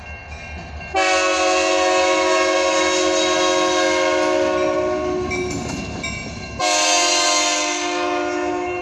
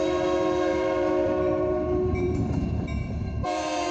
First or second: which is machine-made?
second